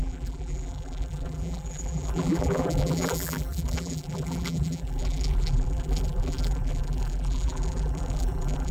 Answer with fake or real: fake